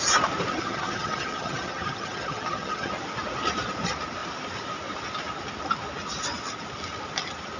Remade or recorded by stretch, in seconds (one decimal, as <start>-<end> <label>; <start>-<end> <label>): 0.0-0.5 recorded; 0.5-2.9 remade; 2.9-7.6 recorded